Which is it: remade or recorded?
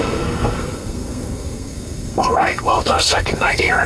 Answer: remade